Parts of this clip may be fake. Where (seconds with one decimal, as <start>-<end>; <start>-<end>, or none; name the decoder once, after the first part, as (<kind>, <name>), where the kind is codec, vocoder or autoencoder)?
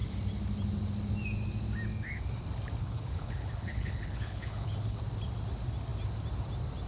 2.8-5.0 (codec, HILCodec)